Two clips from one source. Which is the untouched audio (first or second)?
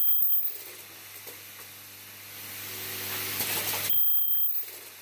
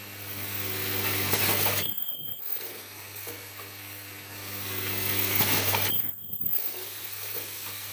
first